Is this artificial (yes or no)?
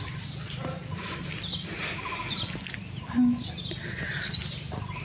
no